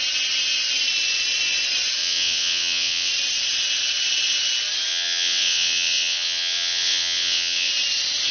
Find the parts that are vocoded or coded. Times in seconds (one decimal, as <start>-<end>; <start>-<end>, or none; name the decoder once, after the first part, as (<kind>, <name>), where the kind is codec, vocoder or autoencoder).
2.0-3.1 (vocoder, WaveNeXt); 4.9-7.7